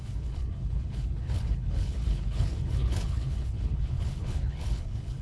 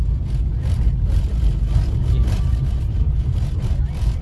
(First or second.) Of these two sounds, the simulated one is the first